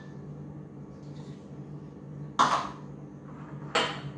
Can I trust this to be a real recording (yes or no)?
yes